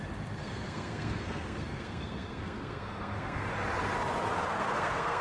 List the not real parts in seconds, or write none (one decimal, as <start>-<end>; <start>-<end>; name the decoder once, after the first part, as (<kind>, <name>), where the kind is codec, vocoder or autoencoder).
0.4-3.5 (codec, SNAC); 4.6-5.2